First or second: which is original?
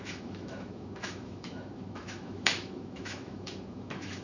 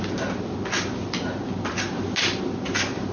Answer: second